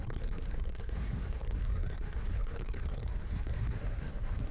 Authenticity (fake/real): fake